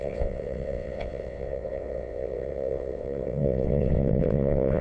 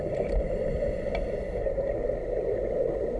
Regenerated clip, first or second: first